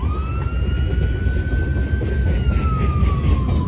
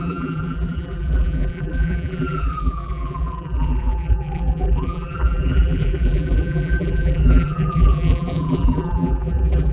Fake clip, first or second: second